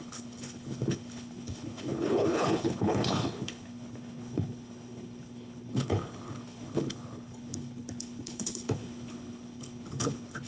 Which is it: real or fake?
fake